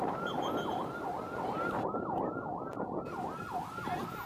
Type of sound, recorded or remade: recorded